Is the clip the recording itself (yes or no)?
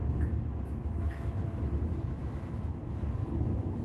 no